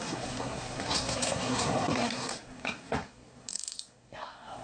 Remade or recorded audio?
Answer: remade